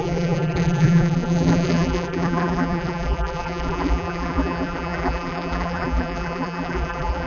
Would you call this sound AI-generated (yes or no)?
yes